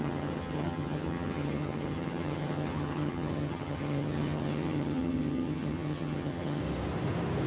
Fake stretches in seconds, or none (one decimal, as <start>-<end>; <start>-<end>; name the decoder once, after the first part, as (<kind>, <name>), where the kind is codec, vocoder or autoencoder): 0.0-6.6 (vocoder, HiFi-GAN)